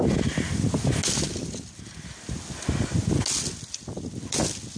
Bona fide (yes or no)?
yes